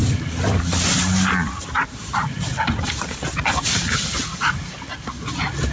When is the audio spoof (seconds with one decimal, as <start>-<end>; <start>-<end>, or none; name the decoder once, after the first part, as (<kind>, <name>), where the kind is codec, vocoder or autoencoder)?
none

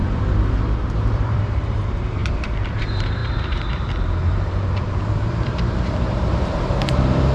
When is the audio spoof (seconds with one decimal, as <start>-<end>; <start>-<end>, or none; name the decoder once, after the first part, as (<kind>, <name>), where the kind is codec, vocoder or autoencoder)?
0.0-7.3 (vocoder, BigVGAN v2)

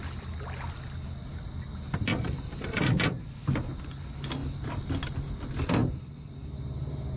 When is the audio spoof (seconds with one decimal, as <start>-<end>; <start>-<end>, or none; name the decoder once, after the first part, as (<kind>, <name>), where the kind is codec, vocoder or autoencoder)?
2.1-2.9 (vocoder, BigVGAN v2); 5.8-7.2

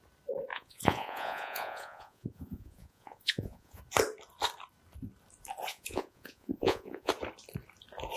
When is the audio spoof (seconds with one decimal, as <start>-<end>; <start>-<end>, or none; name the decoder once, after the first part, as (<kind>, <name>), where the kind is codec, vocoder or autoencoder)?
0.5-3.8 (vocoder, Vocos); 5.7-7.1

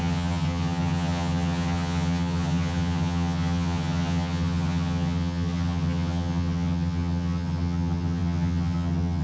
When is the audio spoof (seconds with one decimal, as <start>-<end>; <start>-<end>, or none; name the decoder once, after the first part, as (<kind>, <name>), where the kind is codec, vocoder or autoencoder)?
0.0-9.2 (vocoder, HiFi-GAN)

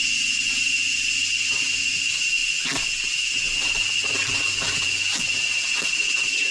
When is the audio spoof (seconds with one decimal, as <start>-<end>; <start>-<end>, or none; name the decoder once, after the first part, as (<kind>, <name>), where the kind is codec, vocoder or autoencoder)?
none

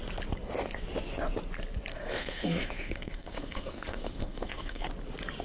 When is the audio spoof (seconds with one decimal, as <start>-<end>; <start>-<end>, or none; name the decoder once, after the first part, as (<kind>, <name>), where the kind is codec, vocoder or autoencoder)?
1.9-4.9 (codec, SNAC)

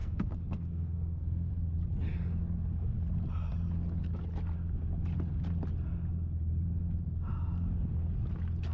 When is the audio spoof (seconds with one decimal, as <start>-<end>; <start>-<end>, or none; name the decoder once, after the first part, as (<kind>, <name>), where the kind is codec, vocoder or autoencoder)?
0.0-1.5 (codec, SNAC)